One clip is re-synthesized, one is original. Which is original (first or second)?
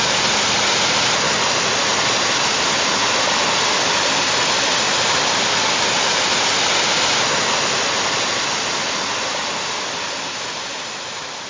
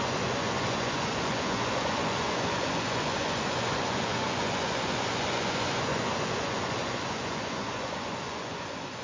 first